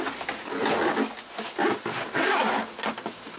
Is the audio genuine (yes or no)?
yes